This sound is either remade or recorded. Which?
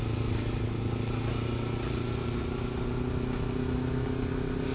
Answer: recorded